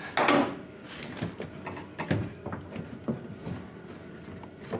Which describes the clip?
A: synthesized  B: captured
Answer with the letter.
B